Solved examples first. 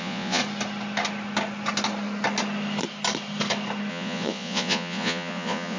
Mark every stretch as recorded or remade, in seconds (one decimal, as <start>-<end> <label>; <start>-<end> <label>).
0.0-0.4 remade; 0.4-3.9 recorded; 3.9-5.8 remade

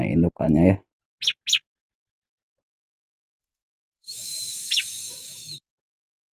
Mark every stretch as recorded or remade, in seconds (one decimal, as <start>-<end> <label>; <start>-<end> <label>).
0.0-3.2 recorded; 3.2-5.7 remade; 5.7-6.3 recorded

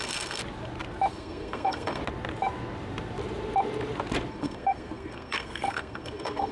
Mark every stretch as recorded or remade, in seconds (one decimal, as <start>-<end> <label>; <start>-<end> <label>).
0.0-0.4 remade; 0.4-1.1 recorded; 1.1-2.0 remade; 2.0-4.3 recorded; 4.3-6.5 remade

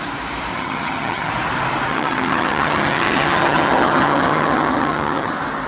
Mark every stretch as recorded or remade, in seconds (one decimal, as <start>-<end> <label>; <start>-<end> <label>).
0.0-0.5 recorded; 0.5-1.3 remade; 1.3-1.9 recorded; 1.9-5.3 remade; 5.3-5.7 recorded

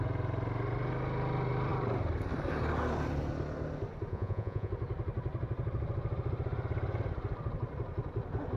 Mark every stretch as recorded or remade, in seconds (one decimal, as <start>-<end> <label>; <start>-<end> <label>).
0.0-4.1 recorded; 4.1-4.7 remade; 4.7-8.6 recorded

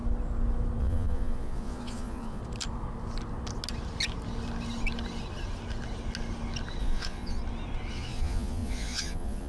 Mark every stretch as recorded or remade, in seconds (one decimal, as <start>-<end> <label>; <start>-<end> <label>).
0.0-0.8 recorded; 0.8-2.4 remade; 2.4-6.8 recorded; 6.8-7.4 remade; 7.4-7.9 recorded; 7.9-9.5 remade